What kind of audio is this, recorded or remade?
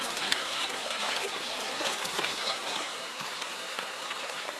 remade